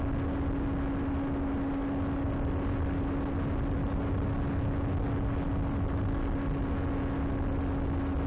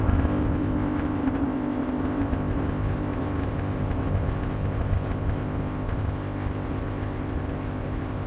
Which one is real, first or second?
first